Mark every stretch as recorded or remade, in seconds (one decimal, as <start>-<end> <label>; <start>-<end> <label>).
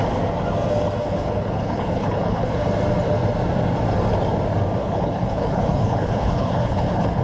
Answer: 0.0-1.0 recorded; 1.0-2.5 remade; 2.5-4.8 recorded; 4.8-7.2 remade